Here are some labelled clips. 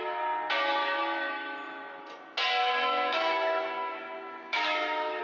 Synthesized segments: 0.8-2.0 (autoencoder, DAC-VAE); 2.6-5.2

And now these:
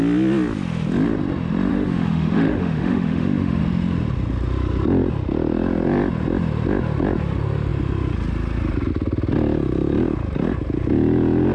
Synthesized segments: 1.7-3.6 (autoencoder, DAC-VAE)

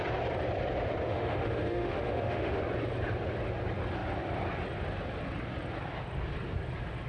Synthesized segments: 1.1-2.6 (autoencoder, DAC-VAE)